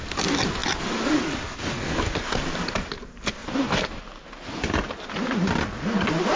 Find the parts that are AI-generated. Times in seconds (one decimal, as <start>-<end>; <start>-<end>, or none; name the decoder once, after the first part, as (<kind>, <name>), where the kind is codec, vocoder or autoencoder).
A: 3.4-4.6 (vocoder, BigVGAN v2)